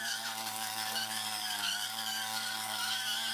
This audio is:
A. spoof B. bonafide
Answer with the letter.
A